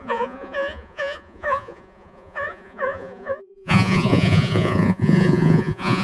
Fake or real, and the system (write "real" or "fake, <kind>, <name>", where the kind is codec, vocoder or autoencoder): fake, vocoder, Vocos